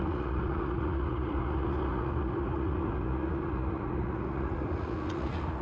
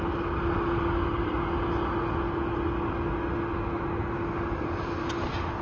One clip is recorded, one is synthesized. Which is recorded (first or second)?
second